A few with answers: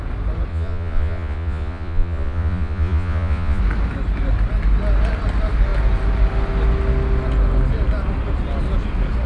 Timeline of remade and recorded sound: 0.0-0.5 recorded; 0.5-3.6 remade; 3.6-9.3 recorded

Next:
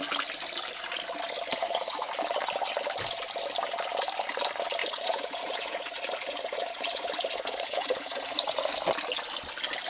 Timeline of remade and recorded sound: 0.0-1.5 recorded; 1.5-2.1 remade; 2.1-4.8 recorded; 4.8-8.7 remade; 8.7-9.9 recorded

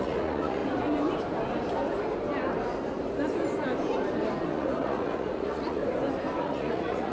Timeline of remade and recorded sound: 0.0-0.6 remade; 0.6-4.5 recorded; 4.5-5.8 remade; 5.8-6.4 recorded; 6.4-7.1 remade

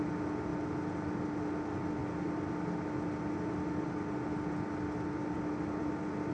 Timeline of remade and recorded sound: 0.0-6.3 recorded